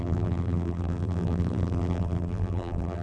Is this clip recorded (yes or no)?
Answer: no